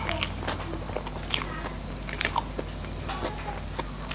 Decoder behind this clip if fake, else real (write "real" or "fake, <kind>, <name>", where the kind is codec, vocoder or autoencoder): real